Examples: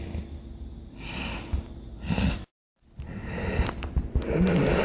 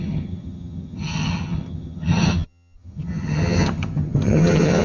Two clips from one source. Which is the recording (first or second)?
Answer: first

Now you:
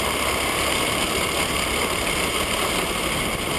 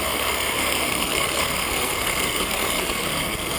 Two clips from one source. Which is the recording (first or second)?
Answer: first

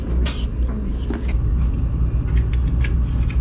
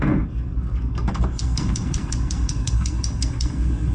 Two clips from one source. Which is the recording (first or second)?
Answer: first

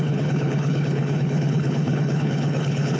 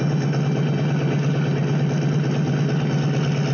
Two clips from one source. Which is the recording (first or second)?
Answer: second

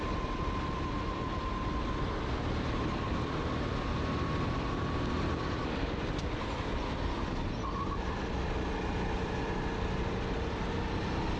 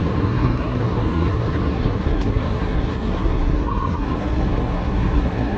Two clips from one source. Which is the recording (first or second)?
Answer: first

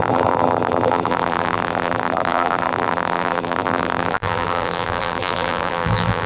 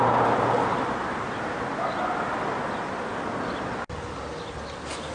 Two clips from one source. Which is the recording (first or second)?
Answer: second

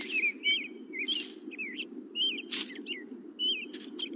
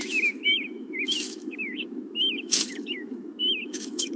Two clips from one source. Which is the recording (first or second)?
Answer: first